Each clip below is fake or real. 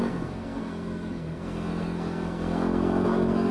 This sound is fake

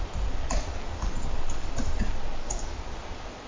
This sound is real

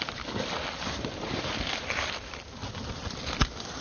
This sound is real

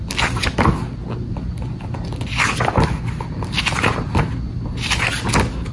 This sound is real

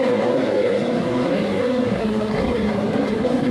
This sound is fake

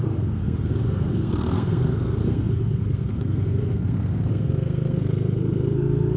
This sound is fake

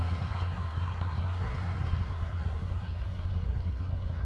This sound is fake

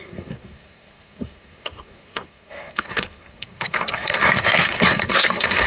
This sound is fake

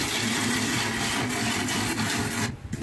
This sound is real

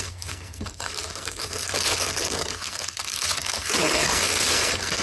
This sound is fake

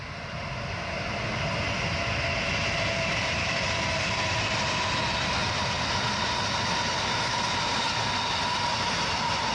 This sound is real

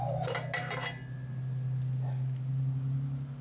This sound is real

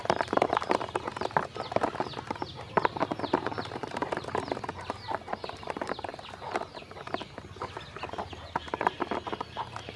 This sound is real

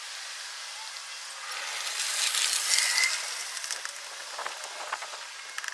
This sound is real